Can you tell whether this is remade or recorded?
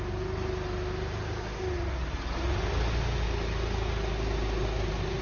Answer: recorded